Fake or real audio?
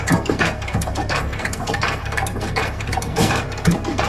fake